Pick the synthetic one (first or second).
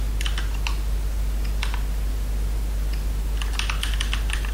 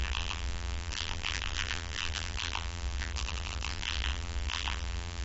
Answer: second